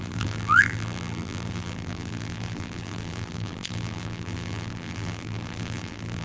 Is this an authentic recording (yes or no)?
no